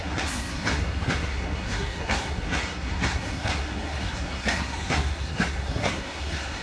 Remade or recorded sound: remade